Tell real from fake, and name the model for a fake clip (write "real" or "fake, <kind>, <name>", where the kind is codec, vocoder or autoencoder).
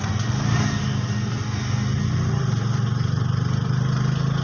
real